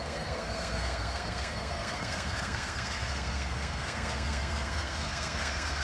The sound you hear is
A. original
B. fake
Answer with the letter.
B